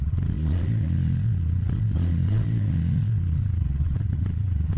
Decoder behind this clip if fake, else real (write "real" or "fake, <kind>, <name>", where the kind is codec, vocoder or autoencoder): fake, vocoder, Vocos